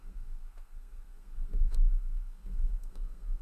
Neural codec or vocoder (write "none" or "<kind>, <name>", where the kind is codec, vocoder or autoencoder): codec, SNAC